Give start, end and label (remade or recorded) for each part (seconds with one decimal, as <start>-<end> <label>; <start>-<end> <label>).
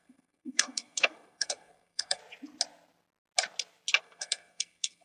0.0-2.2 remade; 2.2-4.0 recorded; 4.0-5.0 remade